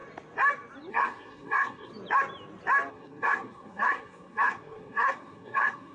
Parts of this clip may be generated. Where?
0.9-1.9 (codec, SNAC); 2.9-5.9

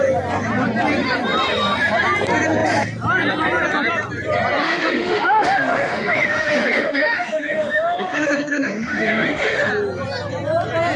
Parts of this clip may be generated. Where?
4.6-9.7 (autoencoder, DAC-VAE)

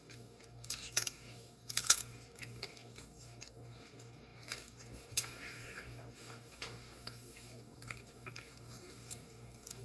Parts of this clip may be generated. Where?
0.0-9.8 (codec, DAC)

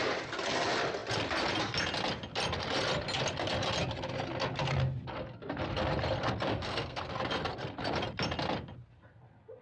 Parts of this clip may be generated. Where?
6.5-7.0 (codec, SNAC)